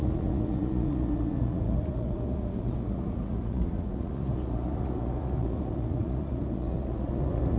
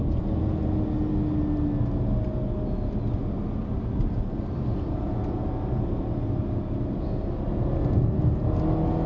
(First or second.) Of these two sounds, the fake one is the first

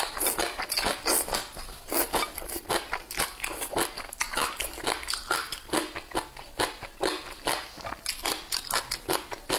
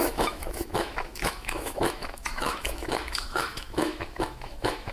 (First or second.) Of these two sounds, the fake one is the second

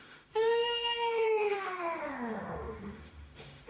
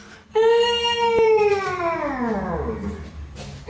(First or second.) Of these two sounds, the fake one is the first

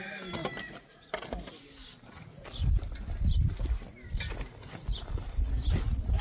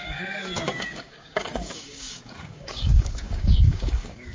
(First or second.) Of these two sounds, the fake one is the second